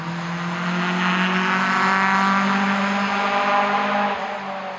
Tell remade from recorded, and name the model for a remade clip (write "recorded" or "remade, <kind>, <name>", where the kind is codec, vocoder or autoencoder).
recorded